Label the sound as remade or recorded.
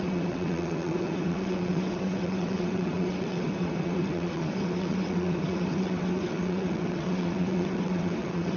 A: remade